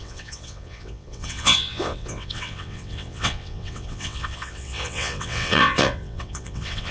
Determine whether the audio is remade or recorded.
remade